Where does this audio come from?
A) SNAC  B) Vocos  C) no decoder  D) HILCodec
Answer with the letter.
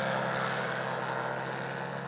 C